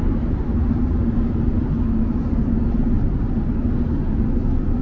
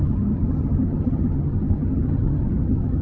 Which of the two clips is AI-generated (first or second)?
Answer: second